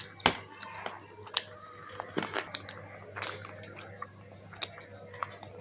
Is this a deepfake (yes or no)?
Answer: no